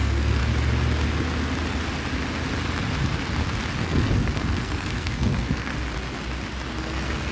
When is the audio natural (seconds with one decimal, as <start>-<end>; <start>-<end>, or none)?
0.4-3.8; 5.7-6.8